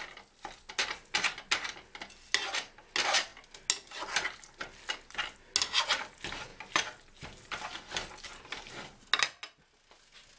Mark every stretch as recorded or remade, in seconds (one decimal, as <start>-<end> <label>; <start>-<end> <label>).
0.0-10.4 recorded